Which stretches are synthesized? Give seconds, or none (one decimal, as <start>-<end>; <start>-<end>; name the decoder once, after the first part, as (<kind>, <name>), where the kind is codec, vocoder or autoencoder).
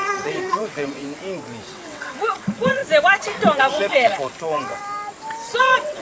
0.0-1.0 (vocoder, WaveNeXt); 1.7-2.8; 3.6-4.8; 5.5-6.0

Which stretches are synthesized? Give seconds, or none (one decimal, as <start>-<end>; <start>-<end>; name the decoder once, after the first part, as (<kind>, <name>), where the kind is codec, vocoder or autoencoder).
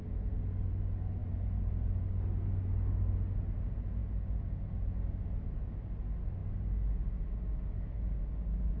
1.2-2.0 (vocoder, Vocos); 4.0-4.7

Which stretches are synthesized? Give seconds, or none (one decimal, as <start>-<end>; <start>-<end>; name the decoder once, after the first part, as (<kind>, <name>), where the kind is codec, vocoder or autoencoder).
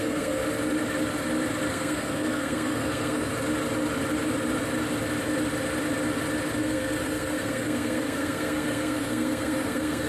0.0-0.4 (codec, SNAC); 1.7-3.3; 6.6-10.1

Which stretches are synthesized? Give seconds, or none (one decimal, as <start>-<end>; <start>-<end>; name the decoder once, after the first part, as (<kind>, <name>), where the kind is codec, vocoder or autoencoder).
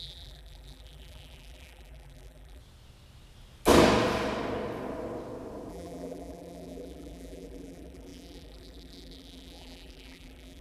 0.0-2.6 (vocoder, BigVGAN v2); 5.7-10.6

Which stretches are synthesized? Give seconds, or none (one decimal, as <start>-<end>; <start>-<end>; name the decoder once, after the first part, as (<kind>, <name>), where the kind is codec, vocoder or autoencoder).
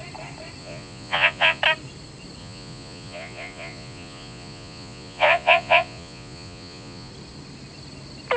0.6-1.6 (vocoder, Vocos); 2.4-7.1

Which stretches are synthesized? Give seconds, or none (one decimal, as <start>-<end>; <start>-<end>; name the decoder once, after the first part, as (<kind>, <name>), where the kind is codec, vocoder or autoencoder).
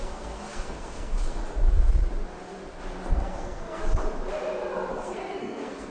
0.0-1.4 (codec, SNAC); 3.1-3.8; 4.9-5.9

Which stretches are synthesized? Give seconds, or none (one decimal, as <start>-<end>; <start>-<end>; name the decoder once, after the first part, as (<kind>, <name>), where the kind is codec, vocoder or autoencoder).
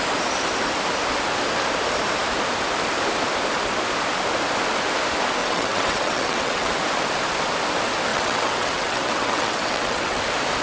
5.4-6.7 (vocoder, WaveNeXt); 8.1-10.2